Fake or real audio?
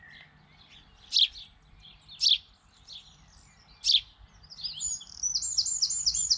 real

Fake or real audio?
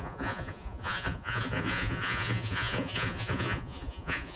fake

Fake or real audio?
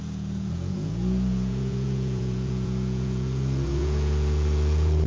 fake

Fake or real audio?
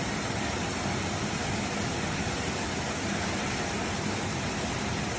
real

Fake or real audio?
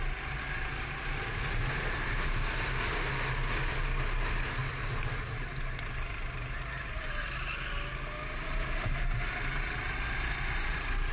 real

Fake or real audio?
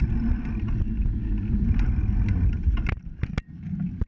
real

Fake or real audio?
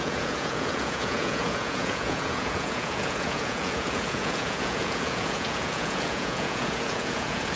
fake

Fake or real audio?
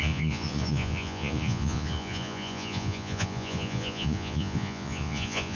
fake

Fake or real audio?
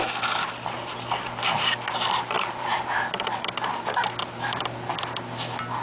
real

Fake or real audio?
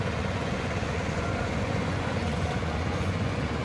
fake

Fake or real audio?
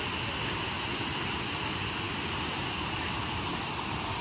real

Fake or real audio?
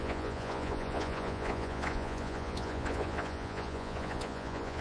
fake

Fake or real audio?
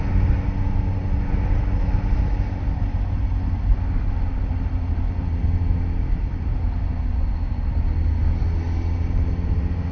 real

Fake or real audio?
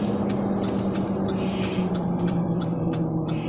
real